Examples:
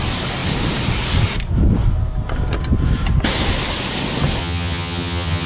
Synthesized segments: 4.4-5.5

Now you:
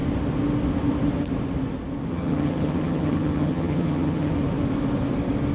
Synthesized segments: 2.1-4.3